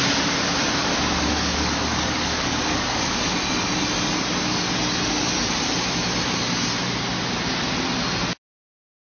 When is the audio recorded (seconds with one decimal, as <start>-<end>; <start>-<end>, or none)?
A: 0.0-0.8; 3.3-9.0

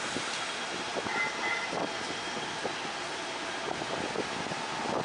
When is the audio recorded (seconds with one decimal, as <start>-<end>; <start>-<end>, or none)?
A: 0.0-5.0

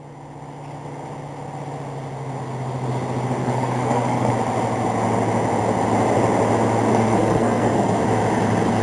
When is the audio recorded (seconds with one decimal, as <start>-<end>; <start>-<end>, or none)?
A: 0.0-3.4; 4.3-6.9; 8.0-8.8

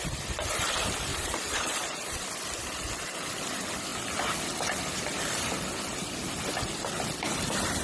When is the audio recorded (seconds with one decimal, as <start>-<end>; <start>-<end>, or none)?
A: 0.0-1.1; 2.2-7.8

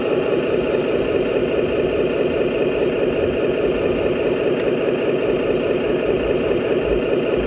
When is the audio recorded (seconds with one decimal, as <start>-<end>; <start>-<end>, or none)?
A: 1.4-5.9

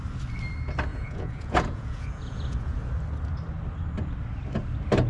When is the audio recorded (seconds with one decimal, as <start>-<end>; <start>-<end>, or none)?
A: 0.0-0.9; 2.9-5.1